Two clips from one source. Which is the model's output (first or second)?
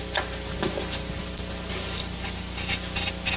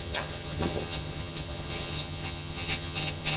second